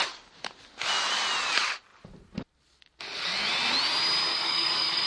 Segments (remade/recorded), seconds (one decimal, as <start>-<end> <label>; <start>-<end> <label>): 0.0-4.3 recorded; 4.3-5.1 remade